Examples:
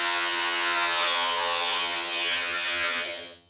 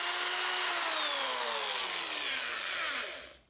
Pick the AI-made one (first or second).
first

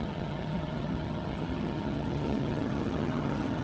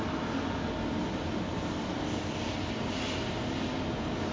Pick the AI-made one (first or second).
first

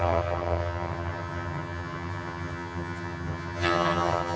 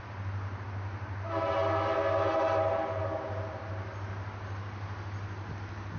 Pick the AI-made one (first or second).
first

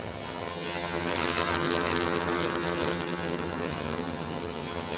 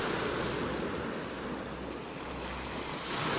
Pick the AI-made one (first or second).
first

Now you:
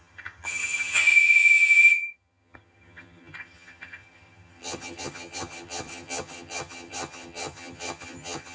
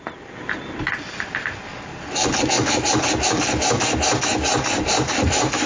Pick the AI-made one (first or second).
first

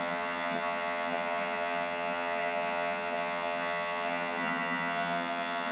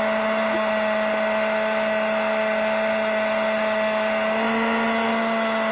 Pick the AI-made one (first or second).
first